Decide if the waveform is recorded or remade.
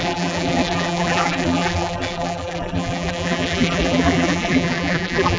remade